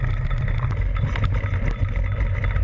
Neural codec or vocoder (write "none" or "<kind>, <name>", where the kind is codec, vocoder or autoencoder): none